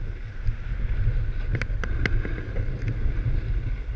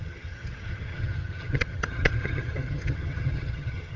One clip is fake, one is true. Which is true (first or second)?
first